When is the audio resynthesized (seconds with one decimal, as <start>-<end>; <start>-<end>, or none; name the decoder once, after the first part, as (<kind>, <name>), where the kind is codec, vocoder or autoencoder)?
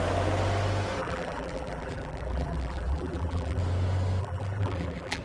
1.0-3.6 (vocoder, BigVGAN v2); 4.2-5.2